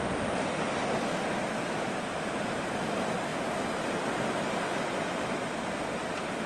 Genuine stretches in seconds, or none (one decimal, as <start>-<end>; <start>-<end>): 0.0-6.5